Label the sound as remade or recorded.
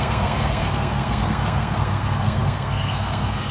remade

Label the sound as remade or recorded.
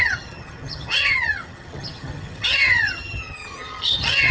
remade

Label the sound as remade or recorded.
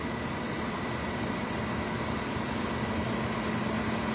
recorded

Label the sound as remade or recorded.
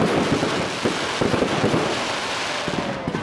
recorded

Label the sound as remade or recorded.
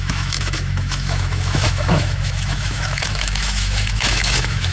remade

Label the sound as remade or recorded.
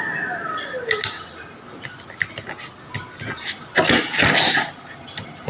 recorded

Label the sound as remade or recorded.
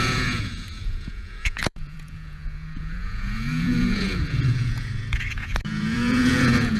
remade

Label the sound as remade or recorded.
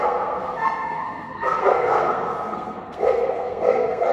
remade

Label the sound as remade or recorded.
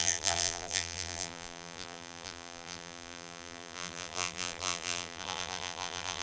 remade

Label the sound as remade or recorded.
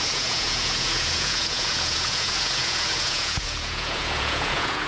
remade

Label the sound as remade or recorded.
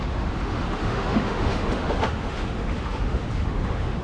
remade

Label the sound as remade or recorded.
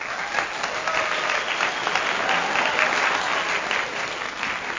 recorded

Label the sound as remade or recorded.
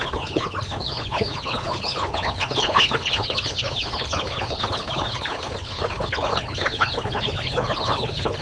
remade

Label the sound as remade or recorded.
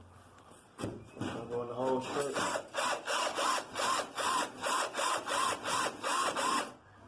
recorded